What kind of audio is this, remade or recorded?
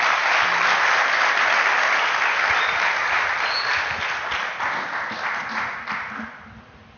recorded